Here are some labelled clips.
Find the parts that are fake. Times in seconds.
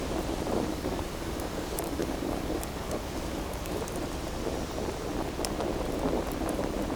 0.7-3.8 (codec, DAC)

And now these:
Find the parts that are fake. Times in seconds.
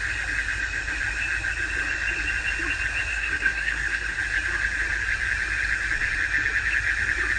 3.1-4.2 (codec, SNAC)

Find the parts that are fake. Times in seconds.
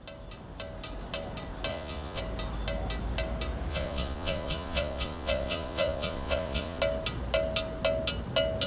1.7-2.2 (vocoder, Vocos); 3.7-6.8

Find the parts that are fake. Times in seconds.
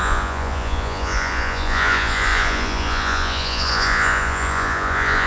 0.0-5.3 (vocoder, Vocos)